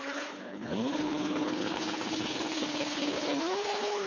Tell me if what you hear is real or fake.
fake